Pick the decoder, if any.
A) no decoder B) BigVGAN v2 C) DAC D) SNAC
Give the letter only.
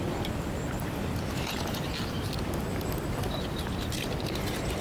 A